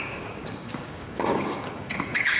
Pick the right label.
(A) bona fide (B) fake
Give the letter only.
B